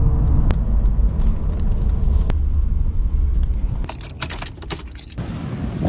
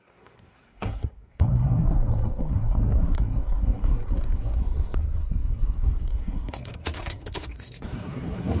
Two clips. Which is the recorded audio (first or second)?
first